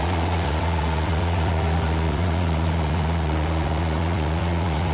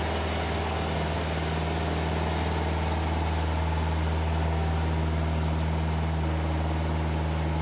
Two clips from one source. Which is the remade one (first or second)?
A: first